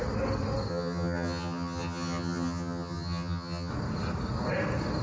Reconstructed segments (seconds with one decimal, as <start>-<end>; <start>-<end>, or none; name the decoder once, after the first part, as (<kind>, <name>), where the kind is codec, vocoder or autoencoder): 0.7-3.7 (vocoder, HiFi-GAN)